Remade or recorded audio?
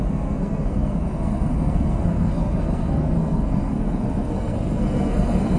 remade